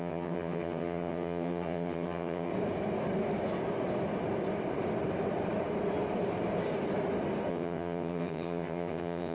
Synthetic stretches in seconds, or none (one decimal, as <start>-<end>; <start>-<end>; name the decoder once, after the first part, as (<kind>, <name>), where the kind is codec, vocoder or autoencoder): 0.0-2.5 (vocoder, HiFi-GAN); 7.5-9.3